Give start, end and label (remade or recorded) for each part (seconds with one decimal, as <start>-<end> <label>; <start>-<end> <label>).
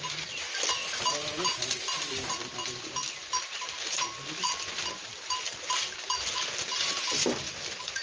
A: 0.0-8.0 recorded